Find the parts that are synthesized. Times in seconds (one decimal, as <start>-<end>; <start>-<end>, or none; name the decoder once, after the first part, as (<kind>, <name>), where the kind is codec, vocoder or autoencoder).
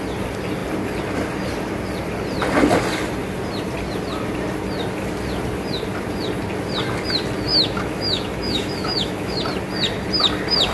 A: 7.5-9.4 (autoencoder, DAC-VAE)